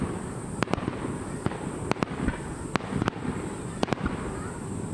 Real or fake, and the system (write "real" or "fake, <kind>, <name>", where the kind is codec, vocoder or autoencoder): real